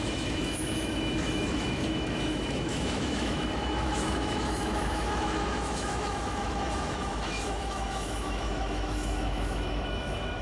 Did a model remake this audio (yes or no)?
yes